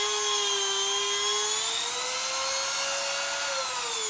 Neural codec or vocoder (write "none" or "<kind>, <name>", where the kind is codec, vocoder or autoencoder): none